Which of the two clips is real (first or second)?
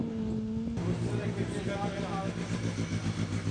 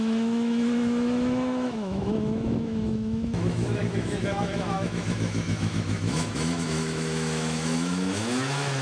first